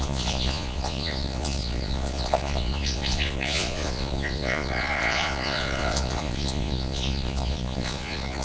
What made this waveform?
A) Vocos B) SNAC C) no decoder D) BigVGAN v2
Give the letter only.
A